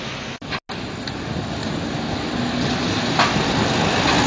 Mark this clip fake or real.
real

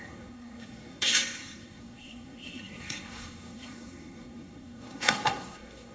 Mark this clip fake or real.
fake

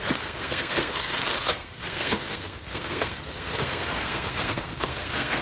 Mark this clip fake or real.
fake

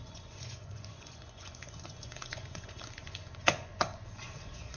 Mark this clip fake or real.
fake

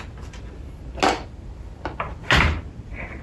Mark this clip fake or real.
real